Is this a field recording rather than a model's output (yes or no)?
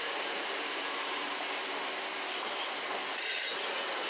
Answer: yes